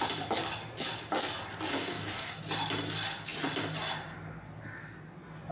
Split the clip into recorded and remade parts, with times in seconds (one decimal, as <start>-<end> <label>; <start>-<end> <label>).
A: 0.0-1.7 recorded; 1.7-2.4 remade; 2.4-5.5 recorded